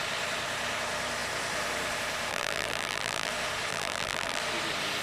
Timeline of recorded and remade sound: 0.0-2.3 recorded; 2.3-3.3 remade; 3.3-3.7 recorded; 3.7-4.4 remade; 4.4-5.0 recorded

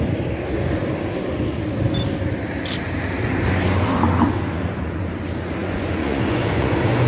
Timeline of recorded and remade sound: 0.0-4.5 recorded; 4.5-5.0 remade; 5.0-5.6 recorded; 5.6-7.1 remade

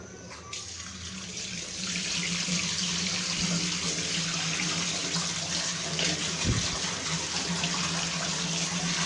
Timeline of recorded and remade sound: 0.0-9.1 recorded

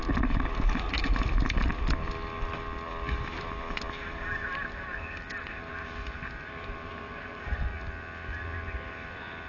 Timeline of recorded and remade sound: 0.0-5.7 recorded; 5.7-7.6 remade; 7.6-9.5 recorded

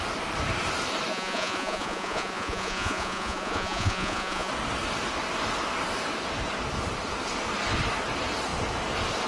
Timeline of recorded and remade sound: 0.0-1.1 recorded; 1.1-4.5 remade; 4.5-9.3 recorded

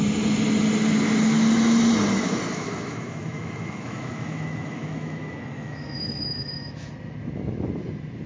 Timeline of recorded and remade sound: 0.0-2.5 recorded; 2.5-6.9 remade; 6.9-8.3 recorded